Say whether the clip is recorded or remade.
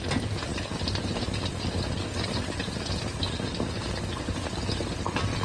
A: recorded